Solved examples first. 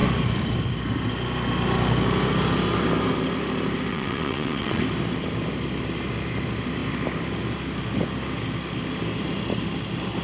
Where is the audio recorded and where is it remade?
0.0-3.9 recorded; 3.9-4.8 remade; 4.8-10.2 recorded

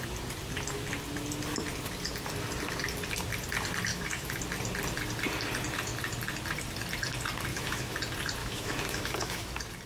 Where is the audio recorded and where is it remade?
0.0-3.9 recorded; 3.9-4.4 remade; 4.4-7.5 recorded; 7.5-8.0 remade; 8.0-8.4 recorded; 8.4-9.5 remade; 9.5-9.9 recorded

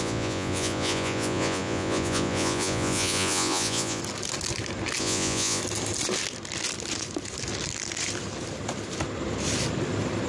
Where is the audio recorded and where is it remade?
0.0-4.0 remade; 4.0-5.0 recorded; 5.0-5.6 remade; 5.6-10.3 recorded

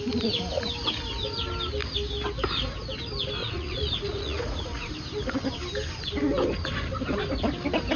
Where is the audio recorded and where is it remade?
0.0-3.4 recorded; 3.4-4.9 remade; 4.9-8.0 recorded

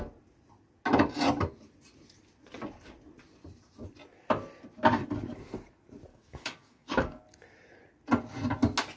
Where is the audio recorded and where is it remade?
0.0-6.1 recorded; 6.1-7.2 remade; 7.2-9.0 recorded

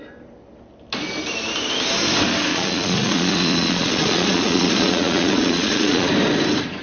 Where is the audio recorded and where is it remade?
0.0-2.5 recorded; 2.5-6.1 remade; 6.1-6.8 recorded

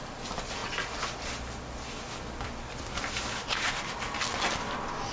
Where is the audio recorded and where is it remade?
0.0-5.1 recorded

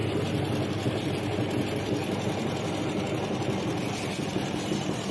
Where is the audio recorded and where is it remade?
0.0-5.1 recorded